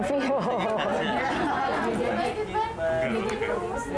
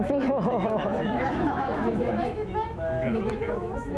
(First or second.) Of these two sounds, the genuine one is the first